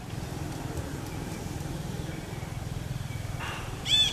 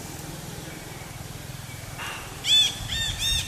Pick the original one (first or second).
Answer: second